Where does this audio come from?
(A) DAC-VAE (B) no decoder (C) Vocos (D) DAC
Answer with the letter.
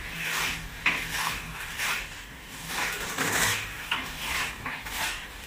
D